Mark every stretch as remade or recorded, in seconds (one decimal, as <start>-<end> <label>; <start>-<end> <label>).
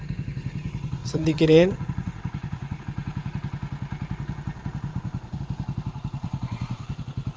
0.0-1.0 recorded; 1.0-2.8 remade; 2.8-4.9 recorded; 4.9-5.4 remade; 5.4-6.2 recorded; 6.2-7.0 remade; 7.0-7.4 recorded